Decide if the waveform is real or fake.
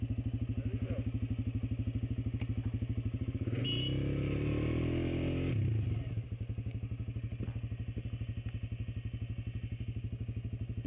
real